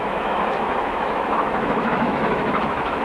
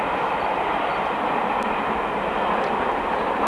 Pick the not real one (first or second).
first